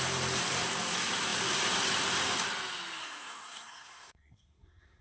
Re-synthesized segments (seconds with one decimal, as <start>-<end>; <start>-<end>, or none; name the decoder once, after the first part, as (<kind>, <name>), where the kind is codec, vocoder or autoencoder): 3.0-5.0 (codec, SNAC)